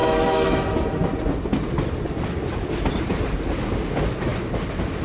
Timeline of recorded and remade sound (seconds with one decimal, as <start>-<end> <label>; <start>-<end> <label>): 0.0-0.6 remade; 0.6-5.0 recorded